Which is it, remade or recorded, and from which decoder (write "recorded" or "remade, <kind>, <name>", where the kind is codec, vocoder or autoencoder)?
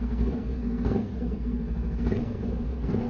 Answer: remade, codec, SNAC